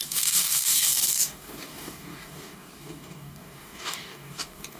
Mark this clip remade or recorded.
remade